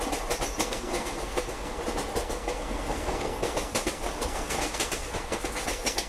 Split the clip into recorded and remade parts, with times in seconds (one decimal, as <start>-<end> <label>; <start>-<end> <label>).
0.0-0.6 recorded; 0.6-1.8 remade; 1.8-2.2 recorded; 2.2-6.1 remade